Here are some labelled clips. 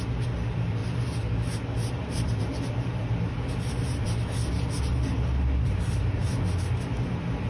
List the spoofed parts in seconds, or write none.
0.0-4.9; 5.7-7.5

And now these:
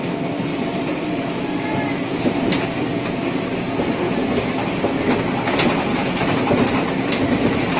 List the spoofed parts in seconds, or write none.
0.5-5.0; 5.9-6.5

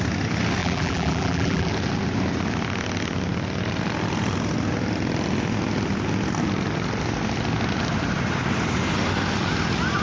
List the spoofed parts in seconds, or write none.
0.6-1.7